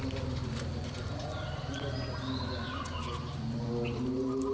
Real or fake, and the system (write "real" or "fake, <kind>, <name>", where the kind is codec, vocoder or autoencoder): real